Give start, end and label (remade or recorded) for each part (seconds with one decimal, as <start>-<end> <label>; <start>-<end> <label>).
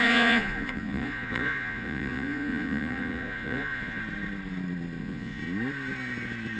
0.0-4.0 remade; 4.0-5.0 recorded; 5.0-5.4 remade; 5.4-6.6 recorded